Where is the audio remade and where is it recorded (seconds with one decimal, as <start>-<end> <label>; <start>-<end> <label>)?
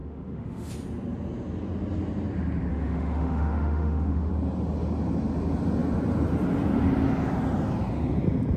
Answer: 0.0-0.7 remade; 0.7-2.7 recorded; 2.7-4.3 remade; 4.3-8.6 recorded